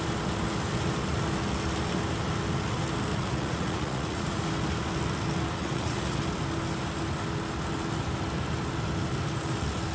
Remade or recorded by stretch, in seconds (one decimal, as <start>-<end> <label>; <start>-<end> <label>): 0.0-3.1 recorded; 3.1-4.4 remade; 4.4-5.6 recorded; 5.6-6.2 remade; 6.2-9.9 recorded